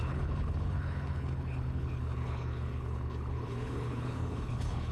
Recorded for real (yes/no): no